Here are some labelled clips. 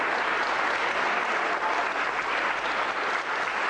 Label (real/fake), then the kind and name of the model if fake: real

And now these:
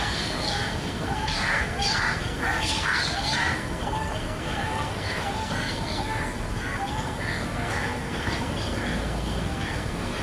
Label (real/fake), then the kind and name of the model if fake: fake, codec, SNAC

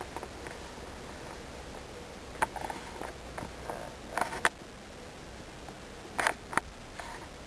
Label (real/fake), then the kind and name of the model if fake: real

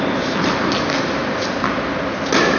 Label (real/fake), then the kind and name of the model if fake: real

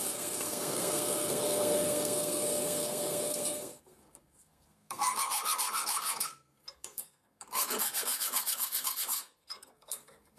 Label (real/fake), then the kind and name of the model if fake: fake, codec, SNAC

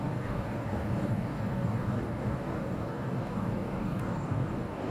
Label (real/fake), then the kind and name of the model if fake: fake, codec, DAC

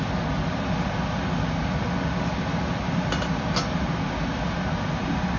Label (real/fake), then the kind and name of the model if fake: real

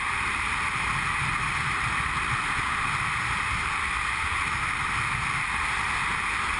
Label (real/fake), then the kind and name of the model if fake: real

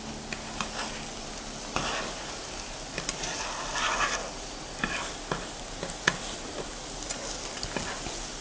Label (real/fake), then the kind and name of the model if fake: real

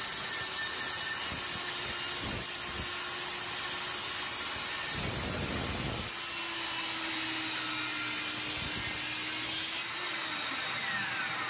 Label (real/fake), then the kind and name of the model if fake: real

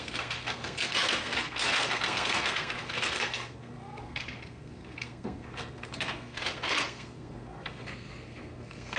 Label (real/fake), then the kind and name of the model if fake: fake, codec, SNAC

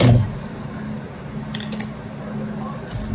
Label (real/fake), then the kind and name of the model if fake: real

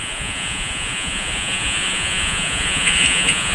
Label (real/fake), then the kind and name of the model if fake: fake, vocoder, Vocos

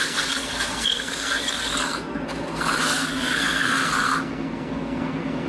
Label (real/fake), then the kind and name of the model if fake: fake, codec, SNAC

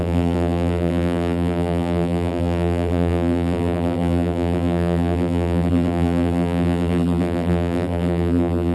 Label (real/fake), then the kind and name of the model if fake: fake, vocoder, BigVGAN v2